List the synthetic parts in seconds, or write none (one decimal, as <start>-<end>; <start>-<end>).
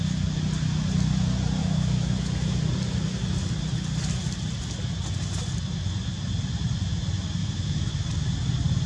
1.6-2.6; 7.4-7.9